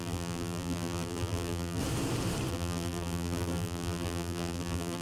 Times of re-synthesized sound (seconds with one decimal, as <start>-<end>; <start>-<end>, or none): 0.0-1.8; 2.5-5.0